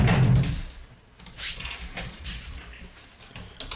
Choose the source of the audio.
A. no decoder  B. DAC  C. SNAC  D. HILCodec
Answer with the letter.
A